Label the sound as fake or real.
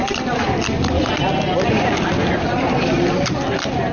real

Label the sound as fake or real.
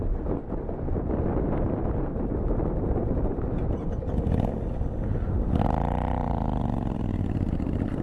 real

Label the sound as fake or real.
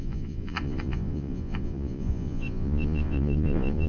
fake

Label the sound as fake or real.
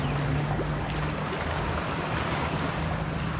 real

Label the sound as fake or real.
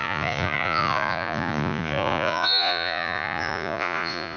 fake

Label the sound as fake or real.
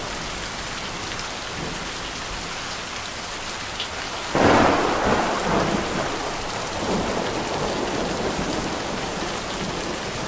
real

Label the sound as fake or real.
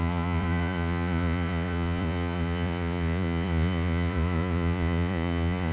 fake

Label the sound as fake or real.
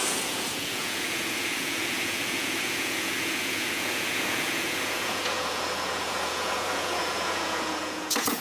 fake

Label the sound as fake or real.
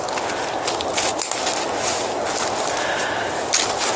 real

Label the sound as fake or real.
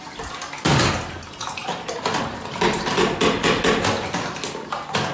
real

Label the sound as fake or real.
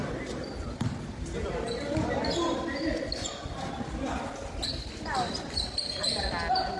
real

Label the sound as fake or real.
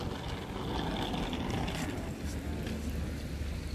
real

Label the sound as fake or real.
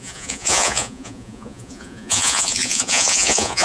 fake